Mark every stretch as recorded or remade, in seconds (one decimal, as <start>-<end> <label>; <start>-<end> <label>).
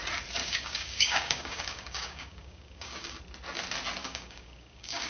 0.0-0.4 recorded; 0.4-3.2 remade; 3.2-4.0 recorded; 4.0-5.1 remade